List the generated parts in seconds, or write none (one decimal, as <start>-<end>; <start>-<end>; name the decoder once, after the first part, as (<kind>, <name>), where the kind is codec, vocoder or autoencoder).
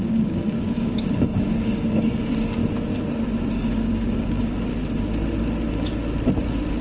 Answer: 0.0-2.6 (codec, DAC); 3.5-4.7